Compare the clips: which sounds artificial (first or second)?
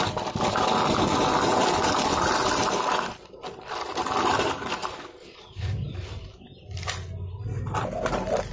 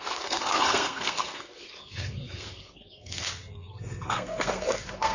second